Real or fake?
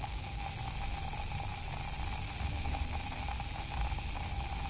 real